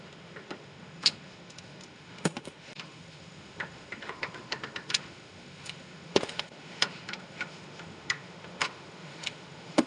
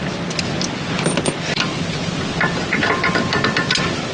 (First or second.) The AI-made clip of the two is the first